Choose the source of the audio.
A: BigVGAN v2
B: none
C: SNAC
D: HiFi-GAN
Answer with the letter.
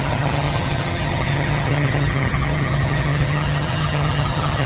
D